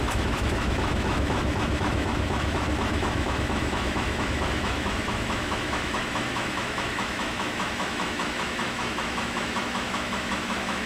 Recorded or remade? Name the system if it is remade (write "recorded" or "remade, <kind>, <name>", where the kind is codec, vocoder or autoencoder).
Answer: remade, autoencoder, DAC-VAE